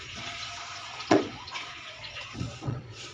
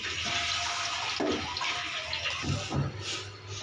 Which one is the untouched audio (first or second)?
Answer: second